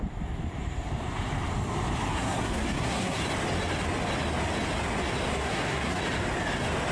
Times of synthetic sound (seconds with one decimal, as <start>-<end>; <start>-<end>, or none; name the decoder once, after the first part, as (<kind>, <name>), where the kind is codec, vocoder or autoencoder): 2.1-3.2 (codec, SNAC); 5.3-6.0